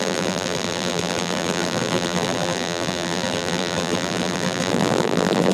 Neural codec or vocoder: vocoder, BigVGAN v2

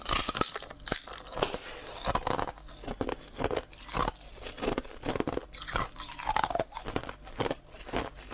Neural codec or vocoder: none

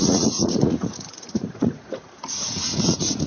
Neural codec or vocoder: vocoder, Vocos